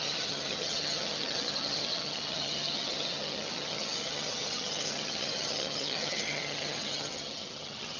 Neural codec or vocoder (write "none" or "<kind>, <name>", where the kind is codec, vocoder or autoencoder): vocoder, HiFi-GAN